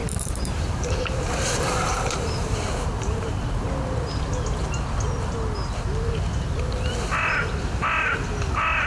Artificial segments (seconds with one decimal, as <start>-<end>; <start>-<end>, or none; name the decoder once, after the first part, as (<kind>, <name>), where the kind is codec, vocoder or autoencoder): 0.0-3.7 (vocoder, BigVGAN v2)